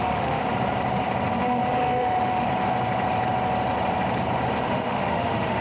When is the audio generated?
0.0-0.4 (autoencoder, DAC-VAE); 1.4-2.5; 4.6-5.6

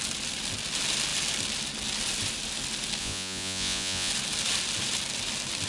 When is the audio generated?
3.0-4.1 (vocoder, Vocos)

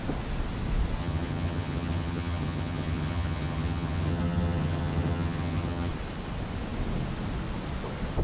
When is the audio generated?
1.0-5.9 (vocoder, HiFi-GAN)

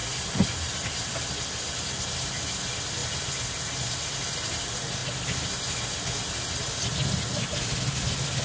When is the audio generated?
none

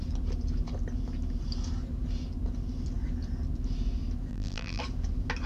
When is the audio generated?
4.3-4.8 (vocoder, BigVGAN v2)

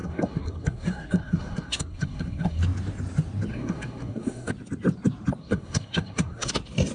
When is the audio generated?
0.0-2.6 (codec, SNAC); 3.5-4.5; 5.4-6.5

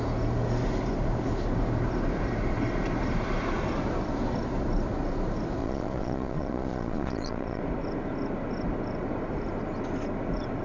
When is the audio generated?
5.6-7.6 (vocoder, Vocos)

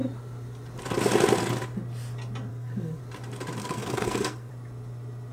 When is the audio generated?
2.5-3.0 (codec, SNAC); 3.6-4.5